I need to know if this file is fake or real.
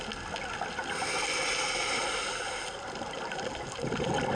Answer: real